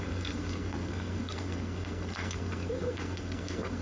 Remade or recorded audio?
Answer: remade